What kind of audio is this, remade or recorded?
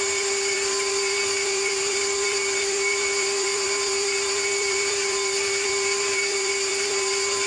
remade